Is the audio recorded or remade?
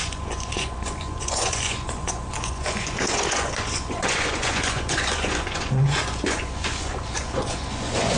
remade